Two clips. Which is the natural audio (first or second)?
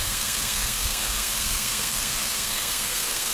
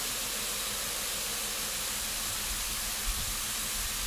second